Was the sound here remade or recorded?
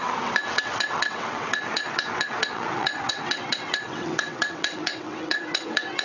remade